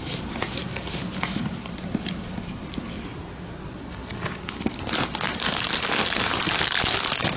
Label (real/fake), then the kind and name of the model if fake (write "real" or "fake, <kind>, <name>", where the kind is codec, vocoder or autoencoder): real